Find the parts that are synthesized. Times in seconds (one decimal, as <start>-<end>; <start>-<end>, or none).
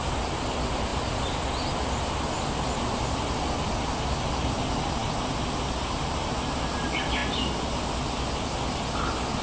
none